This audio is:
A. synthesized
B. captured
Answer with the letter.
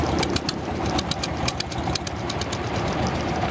B